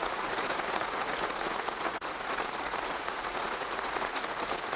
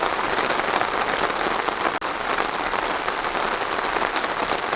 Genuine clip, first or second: second